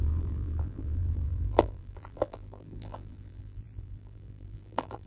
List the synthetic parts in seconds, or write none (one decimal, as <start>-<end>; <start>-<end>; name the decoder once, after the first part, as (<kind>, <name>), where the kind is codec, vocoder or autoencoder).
0.0-5.1 (vocoder, BigVGAN v2)